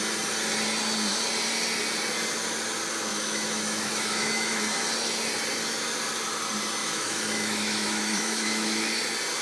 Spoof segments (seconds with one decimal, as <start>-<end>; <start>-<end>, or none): 3.1-4.6; 6.8-9.0